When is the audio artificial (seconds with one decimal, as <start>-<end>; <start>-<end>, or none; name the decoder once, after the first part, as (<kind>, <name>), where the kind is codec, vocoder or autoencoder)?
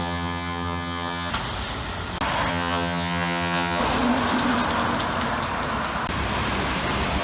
0.0-1.3 (vocoder, HiFi-GAN); 2.5-3.8